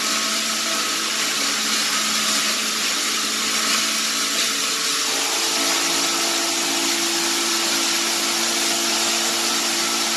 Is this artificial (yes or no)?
no